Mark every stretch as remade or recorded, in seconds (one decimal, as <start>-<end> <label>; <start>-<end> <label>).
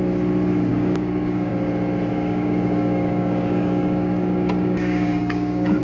0.0-0.7 recorded; 0.7-1.5 remade; 1.5-2.1 recorded; 2.1-5.8 remade